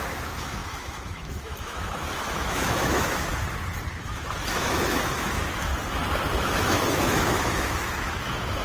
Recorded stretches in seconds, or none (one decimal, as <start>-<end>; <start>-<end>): 3.3-3.9; 5.7-6.3